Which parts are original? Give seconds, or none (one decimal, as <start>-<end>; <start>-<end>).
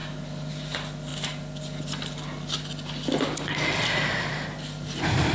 0.0-5.3